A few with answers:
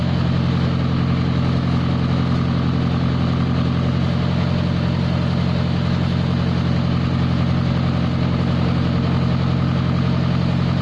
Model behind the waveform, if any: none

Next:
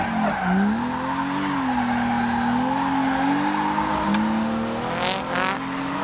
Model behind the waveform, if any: none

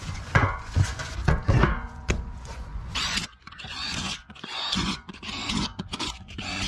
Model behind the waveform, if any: vocoder, Vocos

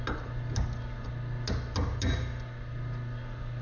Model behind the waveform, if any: none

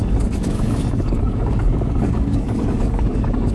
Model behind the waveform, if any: codec, DAC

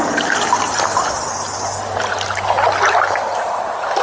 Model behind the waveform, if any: none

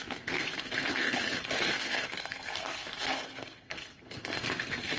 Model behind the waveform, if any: codec, SNAC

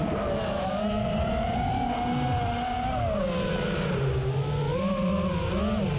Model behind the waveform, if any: none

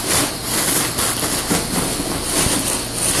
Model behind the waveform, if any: none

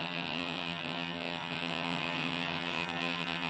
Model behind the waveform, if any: vocoder, HiFi-GAN